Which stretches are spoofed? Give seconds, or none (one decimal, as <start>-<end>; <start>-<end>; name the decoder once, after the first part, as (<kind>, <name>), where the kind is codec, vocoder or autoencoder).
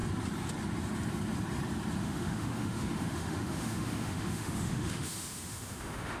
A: 2.0-6.2 (autoencoder, DAC-VAE)